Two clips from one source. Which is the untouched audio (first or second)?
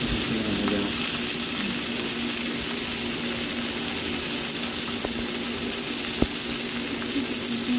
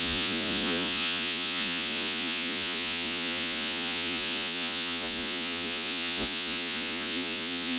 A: first